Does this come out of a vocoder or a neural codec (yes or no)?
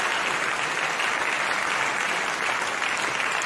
no